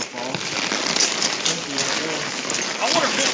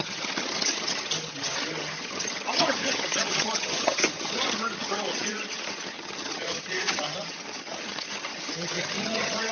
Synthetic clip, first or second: second